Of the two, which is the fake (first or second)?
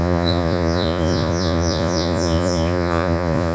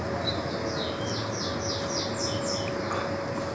first